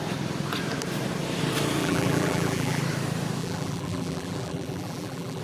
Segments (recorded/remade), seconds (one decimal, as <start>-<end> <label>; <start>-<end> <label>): 0.0-1.8 recorded; 1.8-2.8 remade; 2.8-3.4 recorded; 3.4-5.4 remade